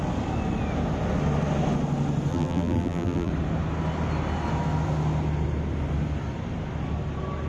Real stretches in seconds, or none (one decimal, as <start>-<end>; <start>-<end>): 0.0-2.3; 3.3-7.5